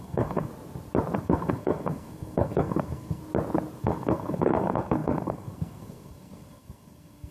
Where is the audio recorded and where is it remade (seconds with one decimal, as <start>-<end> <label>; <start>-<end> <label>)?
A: 0.0-0.5 remade; 0.5-1.2 recorded; 1.2-3.2 remade; 3.2-3.8 recorded; 3.8-7.3 remade